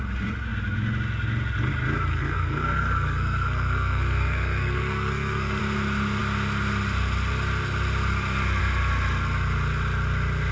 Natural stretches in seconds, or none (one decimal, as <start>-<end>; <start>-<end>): 0.0-2.1; 5.6-10.5